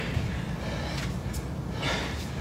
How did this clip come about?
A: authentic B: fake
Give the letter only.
A